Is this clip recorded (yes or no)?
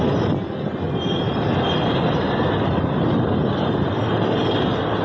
yes